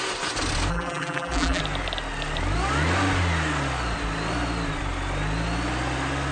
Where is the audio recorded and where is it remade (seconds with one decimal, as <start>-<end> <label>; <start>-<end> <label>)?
0.0-0.7 recorded; 0.7-1.6 remade; 1.6-6.3 recorded